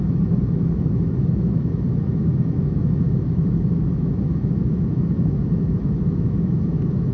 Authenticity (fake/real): fake